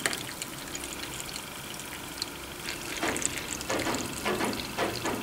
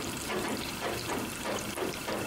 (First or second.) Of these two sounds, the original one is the first